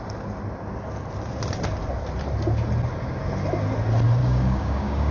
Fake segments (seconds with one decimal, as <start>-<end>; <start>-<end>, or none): 4.2-5.1